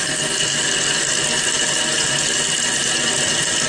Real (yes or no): yes